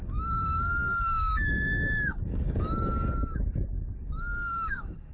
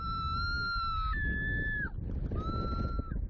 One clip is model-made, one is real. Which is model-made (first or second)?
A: first